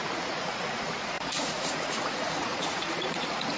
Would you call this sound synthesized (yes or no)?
yes